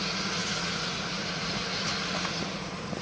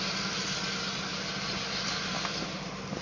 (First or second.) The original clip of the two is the second